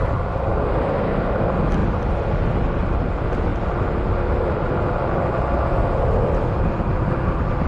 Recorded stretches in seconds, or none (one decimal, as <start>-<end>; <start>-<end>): 0.0-7.7

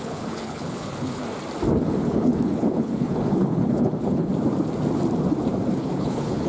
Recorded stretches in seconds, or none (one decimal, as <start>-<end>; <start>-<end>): 1.2-1.8; 4.3-5.8

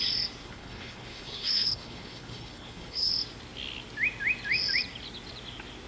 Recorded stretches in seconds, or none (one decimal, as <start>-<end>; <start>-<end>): 0.0-0.4; 3.1-5.9

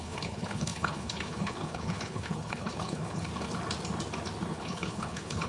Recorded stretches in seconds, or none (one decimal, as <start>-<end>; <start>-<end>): 3.3-4.5

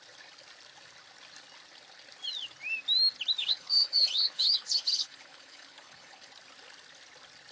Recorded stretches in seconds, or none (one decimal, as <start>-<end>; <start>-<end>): 0.0-3.4; 6.3-7.5

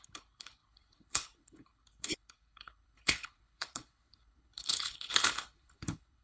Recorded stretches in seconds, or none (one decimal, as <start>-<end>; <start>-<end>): none

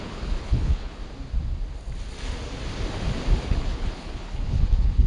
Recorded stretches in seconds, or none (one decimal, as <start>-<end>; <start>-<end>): 1.0-3.4

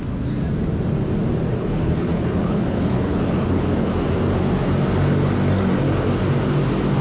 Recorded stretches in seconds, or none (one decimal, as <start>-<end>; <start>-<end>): 0.0-1.5; 3.9-7.0